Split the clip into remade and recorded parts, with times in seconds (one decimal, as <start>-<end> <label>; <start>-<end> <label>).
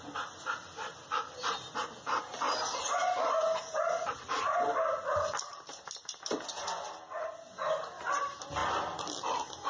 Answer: 0.0-9.7 recorded